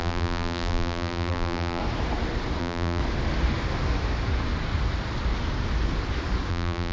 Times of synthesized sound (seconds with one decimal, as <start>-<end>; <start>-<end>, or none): 0.0-1.8; 2.6-3.0; 6.5-6.9